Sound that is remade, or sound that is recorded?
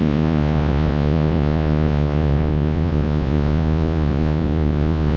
remade